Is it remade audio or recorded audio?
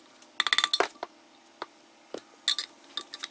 recorded